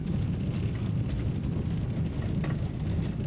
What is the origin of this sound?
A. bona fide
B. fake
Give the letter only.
A